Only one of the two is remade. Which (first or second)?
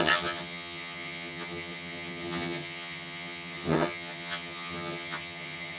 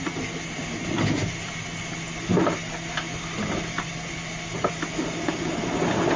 first